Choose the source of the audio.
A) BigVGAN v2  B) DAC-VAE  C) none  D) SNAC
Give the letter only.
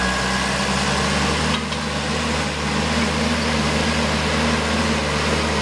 C